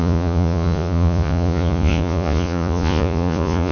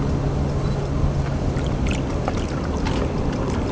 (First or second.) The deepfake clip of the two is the first